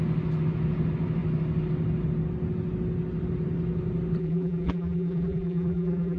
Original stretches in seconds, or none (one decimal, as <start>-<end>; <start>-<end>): 0.0-4.2